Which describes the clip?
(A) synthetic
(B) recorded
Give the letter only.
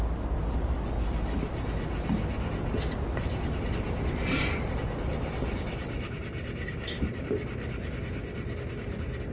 B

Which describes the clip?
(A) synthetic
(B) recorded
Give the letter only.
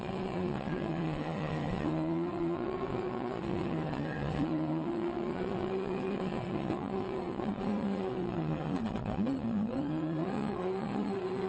A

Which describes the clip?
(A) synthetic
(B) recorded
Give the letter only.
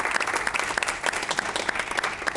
B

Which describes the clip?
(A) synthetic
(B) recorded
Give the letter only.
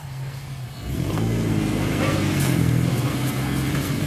A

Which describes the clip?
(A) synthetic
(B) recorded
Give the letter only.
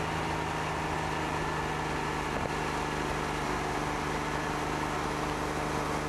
B